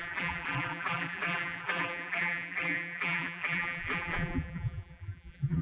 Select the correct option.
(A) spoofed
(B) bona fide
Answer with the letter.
A